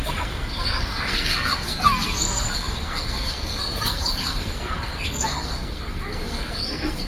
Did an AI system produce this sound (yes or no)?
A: yes